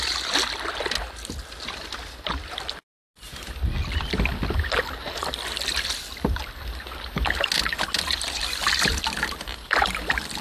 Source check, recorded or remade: recorded